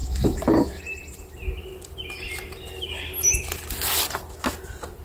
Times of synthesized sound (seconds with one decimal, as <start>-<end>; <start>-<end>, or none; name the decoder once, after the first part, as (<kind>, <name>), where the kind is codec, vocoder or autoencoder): 0.0-0.8 (autoencoder, DAC-VAE)